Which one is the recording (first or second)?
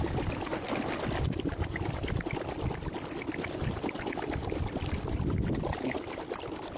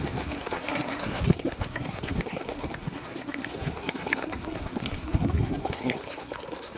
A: first